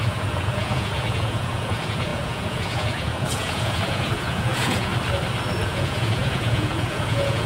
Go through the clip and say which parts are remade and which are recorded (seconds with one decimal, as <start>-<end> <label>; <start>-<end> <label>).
0.0-4.9 remade; 4.9-5.6 recorded; 5.6-7.5 remade